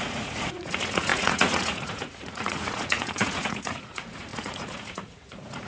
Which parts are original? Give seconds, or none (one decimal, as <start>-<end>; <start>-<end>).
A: none